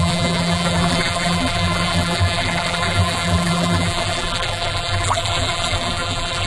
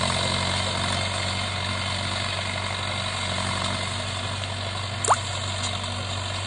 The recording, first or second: second